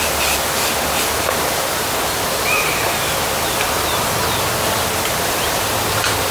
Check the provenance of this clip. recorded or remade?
remade